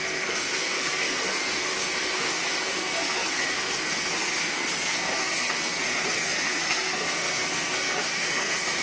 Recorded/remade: remade